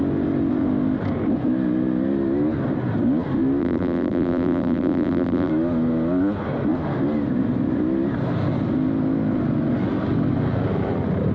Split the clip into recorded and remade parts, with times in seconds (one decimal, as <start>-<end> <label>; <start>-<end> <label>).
0.0-3.6 recorded; 3.6-5.5 remade; 5.5-11.3 recorded